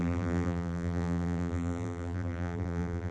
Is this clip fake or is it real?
fake